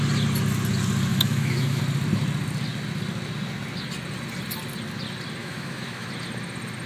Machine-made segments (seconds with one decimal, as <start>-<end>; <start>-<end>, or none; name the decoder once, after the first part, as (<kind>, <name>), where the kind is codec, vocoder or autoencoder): 1.1-1.8 (autoencoder, DAC-VAE); 5.4-6.1